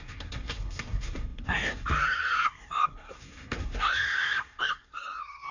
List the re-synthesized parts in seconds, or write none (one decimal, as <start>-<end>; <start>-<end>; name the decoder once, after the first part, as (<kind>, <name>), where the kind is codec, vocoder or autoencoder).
0.0-5.5 (codec, SNAC)